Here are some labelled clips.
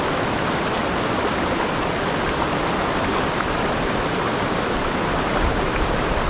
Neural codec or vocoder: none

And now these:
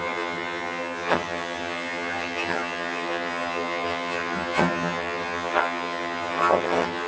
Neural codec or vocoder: vocoder, HiFi-GAN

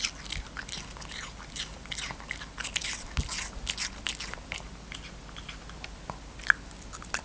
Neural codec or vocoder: none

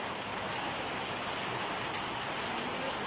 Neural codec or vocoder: none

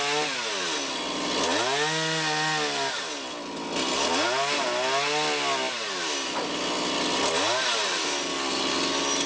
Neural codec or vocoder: none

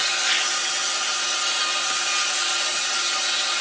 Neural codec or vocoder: none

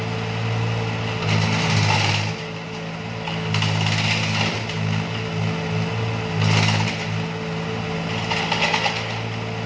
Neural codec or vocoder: none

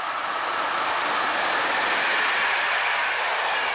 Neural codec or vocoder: none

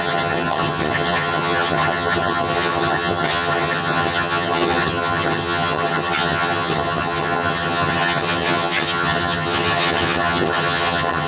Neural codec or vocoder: vocoder, HiFi-GAN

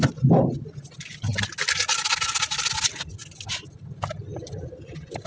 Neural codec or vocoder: none